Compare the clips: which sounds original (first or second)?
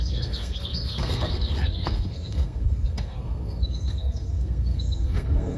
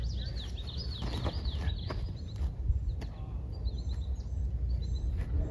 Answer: second